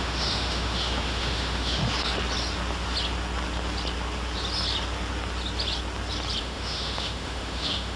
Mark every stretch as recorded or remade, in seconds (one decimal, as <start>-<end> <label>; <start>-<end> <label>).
0.0-1.8 remade; 1.8-6.4 recorded; 6.4-8.0 remade